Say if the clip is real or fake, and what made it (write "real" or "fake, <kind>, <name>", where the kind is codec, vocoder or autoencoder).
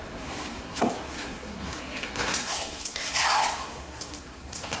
fake, codec, SNAC